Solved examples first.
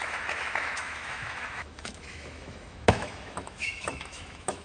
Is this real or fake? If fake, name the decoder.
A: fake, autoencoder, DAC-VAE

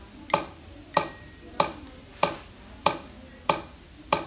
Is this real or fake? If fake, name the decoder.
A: real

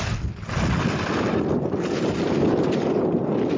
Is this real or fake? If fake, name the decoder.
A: real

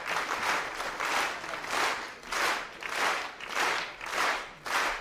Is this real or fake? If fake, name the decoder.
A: real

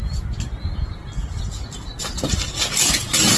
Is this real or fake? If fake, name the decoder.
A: real